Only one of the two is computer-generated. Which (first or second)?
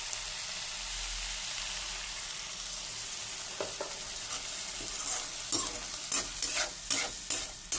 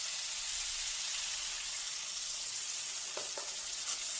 second